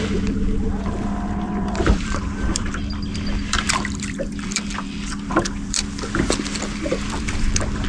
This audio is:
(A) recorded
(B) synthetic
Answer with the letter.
B